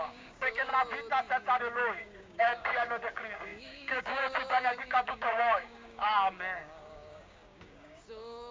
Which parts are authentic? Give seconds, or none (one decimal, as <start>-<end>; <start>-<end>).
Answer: 0.7-1.6